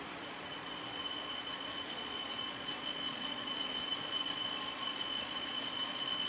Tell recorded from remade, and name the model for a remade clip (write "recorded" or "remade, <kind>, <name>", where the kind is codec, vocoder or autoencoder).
remade, vocoder, Vocos